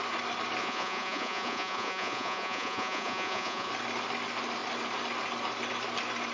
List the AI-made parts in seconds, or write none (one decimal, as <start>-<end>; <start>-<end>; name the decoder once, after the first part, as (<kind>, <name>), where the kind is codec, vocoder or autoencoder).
0.6-3.7 (vocoder, Vocos)